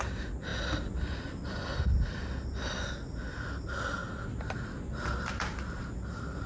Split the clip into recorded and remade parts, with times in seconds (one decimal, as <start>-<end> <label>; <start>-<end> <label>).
0.0-6.5 recorded

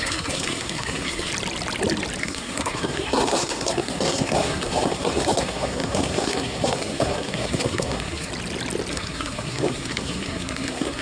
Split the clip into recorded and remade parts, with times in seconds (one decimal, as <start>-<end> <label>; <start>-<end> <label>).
0.0-1.3 remade; 1.3-2.2 recorded; 2.2-8.3 remade; 8.3-8.9 recorded; 8.9-11.0 remade

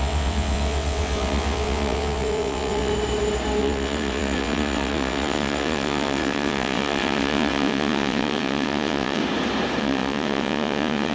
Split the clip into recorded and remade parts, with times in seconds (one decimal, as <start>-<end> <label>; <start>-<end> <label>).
0.0-2.9 remade; 2.9-3.6 recorded; 3.6-9.2 remade; 9.2-9.8 recorded; 9.8-11.1 remade